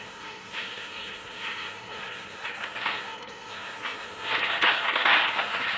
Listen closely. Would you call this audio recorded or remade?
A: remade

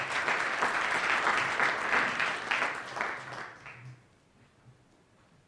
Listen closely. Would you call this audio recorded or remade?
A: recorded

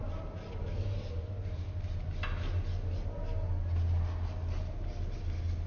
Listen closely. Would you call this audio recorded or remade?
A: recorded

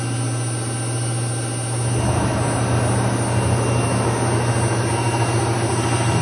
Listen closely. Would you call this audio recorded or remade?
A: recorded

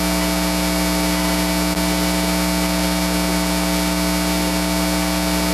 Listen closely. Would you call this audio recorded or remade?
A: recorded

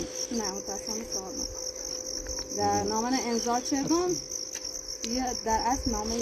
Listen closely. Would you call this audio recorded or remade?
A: recorded